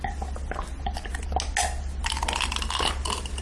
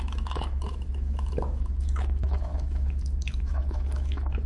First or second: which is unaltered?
first